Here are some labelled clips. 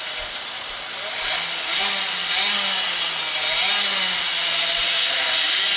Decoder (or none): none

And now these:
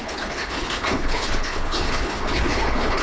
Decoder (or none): codec, HILCodec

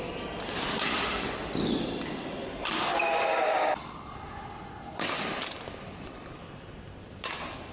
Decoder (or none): none